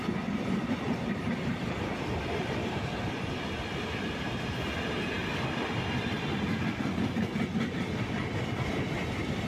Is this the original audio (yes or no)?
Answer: yes